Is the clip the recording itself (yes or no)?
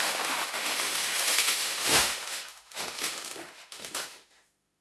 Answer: no